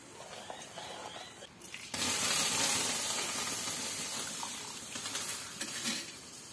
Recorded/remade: remade